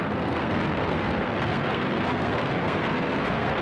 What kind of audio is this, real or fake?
fake